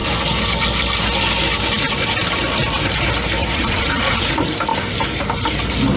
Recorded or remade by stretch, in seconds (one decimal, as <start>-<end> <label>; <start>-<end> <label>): 0.0-3.4 recorded; 3.4-4.3 remade; 4.3-6.0 recorded